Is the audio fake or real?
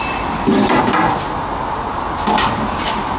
real